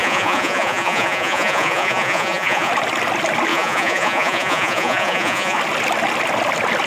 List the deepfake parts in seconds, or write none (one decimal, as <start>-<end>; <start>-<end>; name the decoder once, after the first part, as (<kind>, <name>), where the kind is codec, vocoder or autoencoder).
0.0-2.7 (vocoder, Vocos); 3.5-5.6